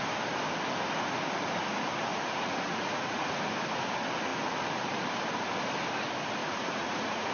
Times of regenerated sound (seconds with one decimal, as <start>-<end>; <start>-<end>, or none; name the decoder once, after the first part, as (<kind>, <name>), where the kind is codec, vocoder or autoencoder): 2.1-3.4 (vocoder, Vocos); 6.4-7.3

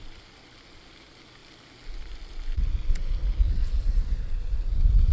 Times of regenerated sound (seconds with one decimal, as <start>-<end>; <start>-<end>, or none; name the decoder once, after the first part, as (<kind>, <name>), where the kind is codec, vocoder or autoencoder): none

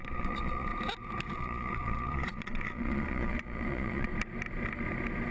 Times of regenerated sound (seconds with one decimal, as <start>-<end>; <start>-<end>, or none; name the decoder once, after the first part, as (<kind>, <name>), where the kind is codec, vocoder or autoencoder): 0.0-0.7 (vocoder, Vocos); 1.3-4.1